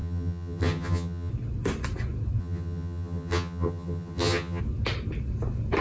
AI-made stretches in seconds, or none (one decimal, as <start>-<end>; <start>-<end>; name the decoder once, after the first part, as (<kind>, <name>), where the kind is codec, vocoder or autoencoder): 0.0-1.3 (vocoder, HiFi-GAN); 2.4-4.6